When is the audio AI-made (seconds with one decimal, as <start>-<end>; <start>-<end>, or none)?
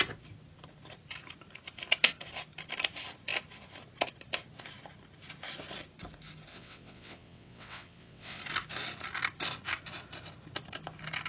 6.5-8.4